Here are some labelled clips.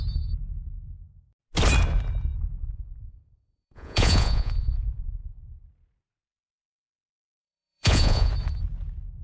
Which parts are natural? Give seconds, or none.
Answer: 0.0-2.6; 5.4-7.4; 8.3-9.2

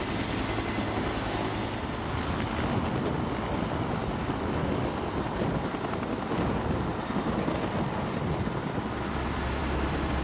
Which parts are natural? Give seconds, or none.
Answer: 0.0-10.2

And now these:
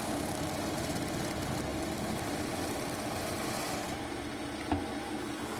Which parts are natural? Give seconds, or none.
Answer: 0.0-5.6